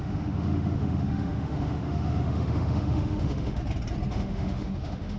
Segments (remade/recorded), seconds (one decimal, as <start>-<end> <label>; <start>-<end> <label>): 0.0-3.6 remade; 3.6-4.1 recorded; 4.1-5.2 remade